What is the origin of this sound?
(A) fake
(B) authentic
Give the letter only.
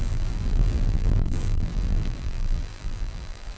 A